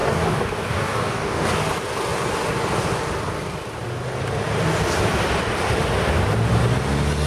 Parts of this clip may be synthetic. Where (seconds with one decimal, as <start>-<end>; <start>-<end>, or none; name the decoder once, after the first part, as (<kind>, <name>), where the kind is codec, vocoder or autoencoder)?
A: 0.0-1.5 (codec, DAC)